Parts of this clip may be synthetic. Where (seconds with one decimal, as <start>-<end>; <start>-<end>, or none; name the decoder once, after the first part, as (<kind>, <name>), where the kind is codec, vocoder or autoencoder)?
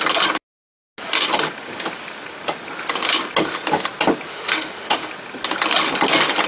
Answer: 4.3-5.1 (autoencoder, DAC-VAE)